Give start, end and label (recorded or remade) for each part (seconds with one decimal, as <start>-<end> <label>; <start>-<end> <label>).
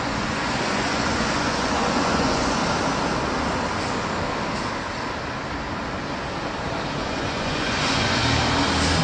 0.0-2.6 remade; 2.6-7.0 recorded; 7.0-8.2 remade; 8.2-9.0 recorded